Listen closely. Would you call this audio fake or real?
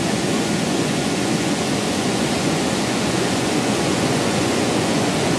fake